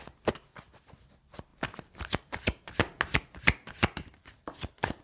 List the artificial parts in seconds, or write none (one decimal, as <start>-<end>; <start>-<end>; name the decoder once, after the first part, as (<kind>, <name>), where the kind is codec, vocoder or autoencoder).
none